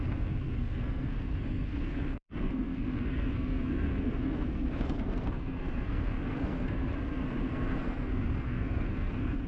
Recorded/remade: remade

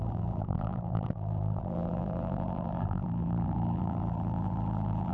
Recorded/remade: remade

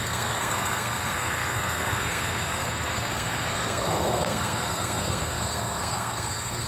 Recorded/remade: remade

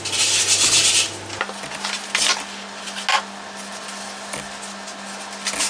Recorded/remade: recorded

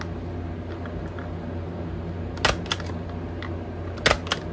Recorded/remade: recorded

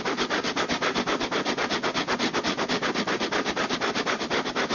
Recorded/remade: recorded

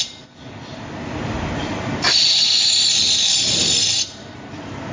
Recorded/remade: recorded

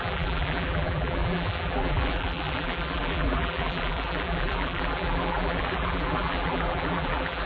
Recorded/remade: remade